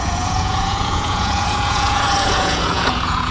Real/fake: fake